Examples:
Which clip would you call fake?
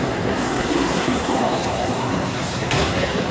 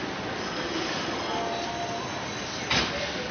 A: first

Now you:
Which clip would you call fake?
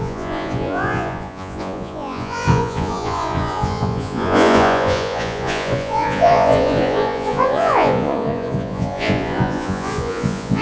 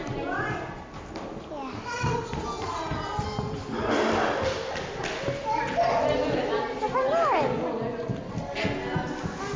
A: first